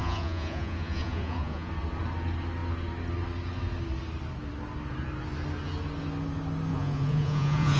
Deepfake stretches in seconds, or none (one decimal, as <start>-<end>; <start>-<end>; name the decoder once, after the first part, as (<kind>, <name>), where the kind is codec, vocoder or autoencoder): 0.0-1.7 (vocoder, Vocos); 6.7-7.8